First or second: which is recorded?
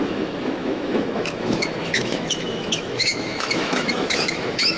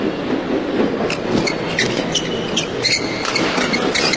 second